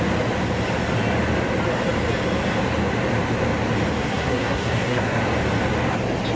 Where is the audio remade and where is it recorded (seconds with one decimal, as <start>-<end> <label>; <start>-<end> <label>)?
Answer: 0.0-4.0 recorded; 4.0-5.2 remade; 5.2-6.4 recorded